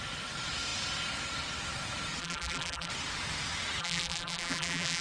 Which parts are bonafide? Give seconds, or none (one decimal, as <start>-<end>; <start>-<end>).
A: 0.0-2.2; 2.9-3.8